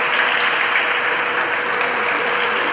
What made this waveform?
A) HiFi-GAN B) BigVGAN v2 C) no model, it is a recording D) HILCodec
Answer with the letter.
C